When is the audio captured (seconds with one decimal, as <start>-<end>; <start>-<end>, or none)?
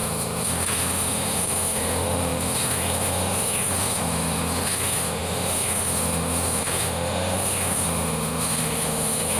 none